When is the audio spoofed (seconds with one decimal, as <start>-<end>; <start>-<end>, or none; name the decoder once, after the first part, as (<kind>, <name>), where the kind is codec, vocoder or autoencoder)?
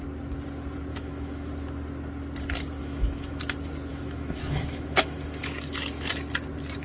0.9-1.5 (autoencoder, DAC-VAE); 2.8-3.4; 3.9-6.1